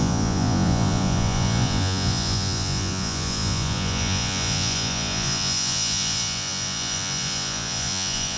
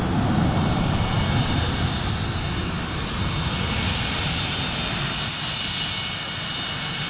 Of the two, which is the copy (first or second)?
first